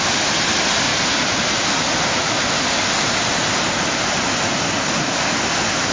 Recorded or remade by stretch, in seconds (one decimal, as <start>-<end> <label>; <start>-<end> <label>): 0.0-5.9 recorded